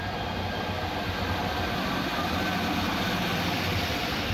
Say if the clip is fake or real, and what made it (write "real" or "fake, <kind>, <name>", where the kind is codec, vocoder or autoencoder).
real